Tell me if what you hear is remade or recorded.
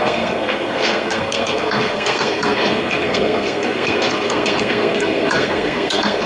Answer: remade